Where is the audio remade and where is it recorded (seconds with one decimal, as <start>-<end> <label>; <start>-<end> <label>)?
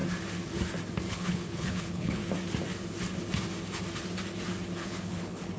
0.0-1.1 recorded; 1.1-2.2 remade; 2.2-4.8 recorded; 4.8-5.6 remade